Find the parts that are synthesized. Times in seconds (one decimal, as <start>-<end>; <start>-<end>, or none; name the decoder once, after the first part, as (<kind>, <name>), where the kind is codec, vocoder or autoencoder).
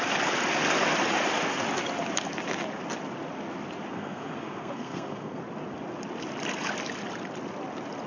3.9-5.4 (codec, SNAC)